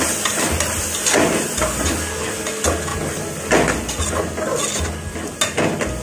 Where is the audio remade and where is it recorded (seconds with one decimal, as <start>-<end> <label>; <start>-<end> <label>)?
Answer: 0.0-6.0 recorded